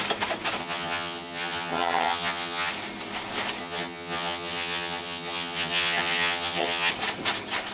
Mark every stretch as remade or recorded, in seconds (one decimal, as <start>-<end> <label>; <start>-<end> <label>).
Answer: 0.0-0.6 recorded; 0.6-2.7 remade; 2.7-3.6 recorded; 3.6-6.9 remade; 6.9-7.7 recorded